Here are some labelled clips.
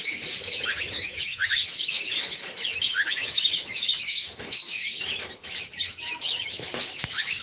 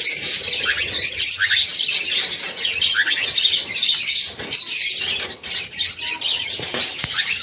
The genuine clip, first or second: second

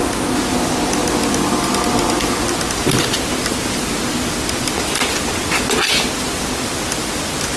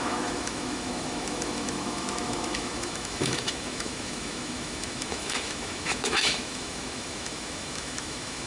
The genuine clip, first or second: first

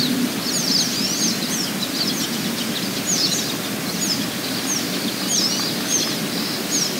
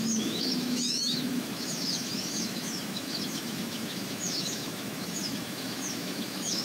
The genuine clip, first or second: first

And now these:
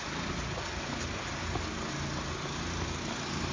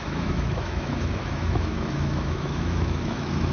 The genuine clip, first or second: first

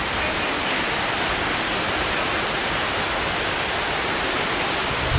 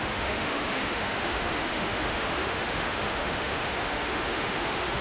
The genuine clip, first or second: first